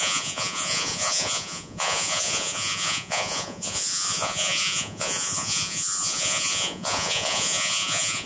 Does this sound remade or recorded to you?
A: remade